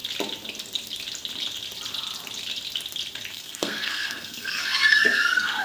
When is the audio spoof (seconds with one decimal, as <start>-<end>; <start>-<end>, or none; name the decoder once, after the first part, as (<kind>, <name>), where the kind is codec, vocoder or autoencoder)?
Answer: 3.3-5.6 (codec, SNAC)